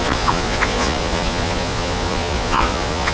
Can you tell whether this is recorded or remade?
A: remade